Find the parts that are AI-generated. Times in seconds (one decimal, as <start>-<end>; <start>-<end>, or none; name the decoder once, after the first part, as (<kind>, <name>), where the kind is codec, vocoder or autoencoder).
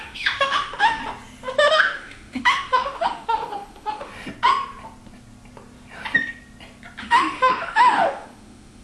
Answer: 0.0-1.0 (autoencoder, DAC-VAE); 1.7-4.1; 7.0-8.8